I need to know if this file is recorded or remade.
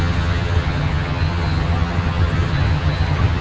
remade